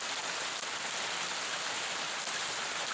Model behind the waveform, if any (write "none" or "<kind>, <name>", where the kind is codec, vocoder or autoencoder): none